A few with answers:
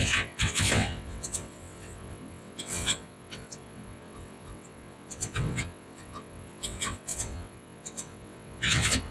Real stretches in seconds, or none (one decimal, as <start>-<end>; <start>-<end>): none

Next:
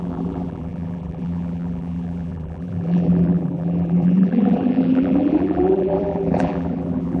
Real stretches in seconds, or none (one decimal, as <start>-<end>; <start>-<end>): none

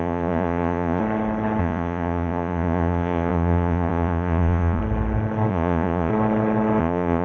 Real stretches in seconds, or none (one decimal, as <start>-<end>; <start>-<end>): 1.0-1.6; 4.8-5.5; 6.1-6.8

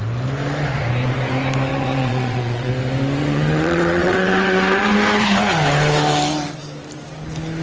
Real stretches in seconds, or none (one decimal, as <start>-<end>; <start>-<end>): 0.0-1.7; 2.7-3.2; 4.9-7.6

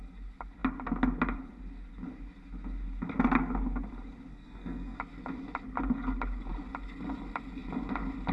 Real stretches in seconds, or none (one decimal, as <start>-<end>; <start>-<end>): 0.0-4.3; 5.0-8.3

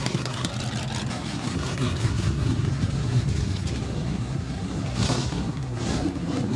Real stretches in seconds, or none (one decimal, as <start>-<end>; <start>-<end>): 0.5-1.1

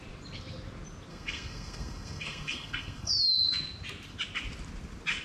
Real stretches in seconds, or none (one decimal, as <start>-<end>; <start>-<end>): 0.0-1.1; 3.1-5.2

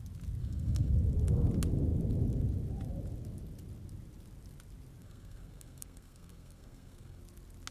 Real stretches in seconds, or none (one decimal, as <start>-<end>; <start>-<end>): 0.0-0.4; 0.9-5.0; 7.2-7.7